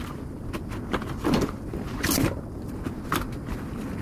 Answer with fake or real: fake